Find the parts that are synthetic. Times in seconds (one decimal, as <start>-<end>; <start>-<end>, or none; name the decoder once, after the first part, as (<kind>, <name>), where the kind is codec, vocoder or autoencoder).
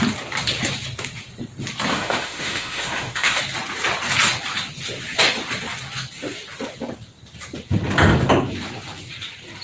1.9-3.4 (autoencoder, DAC-VAE)